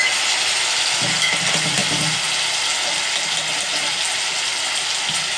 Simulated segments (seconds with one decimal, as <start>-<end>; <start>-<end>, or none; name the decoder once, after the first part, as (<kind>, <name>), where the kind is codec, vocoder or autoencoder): none